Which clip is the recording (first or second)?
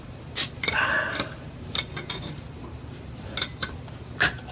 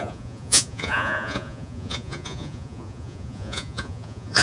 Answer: first